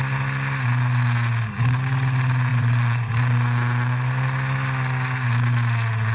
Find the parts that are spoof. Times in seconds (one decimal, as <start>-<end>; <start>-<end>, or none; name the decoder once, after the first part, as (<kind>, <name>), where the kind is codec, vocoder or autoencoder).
2.5-3.1 (vocoder, Vocos)

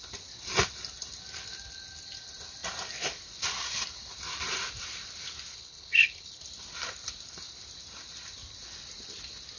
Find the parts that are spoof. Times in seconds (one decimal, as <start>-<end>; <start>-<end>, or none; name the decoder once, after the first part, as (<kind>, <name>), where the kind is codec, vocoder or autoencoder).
5.5-6.4 (codec, HILCodec)